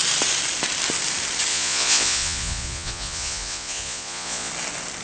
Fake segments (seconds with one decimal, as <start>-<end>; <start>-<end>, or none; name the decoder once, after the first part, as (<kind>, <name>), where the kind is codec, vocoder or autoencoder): 1.5-4.5 (vocoder, Vocos)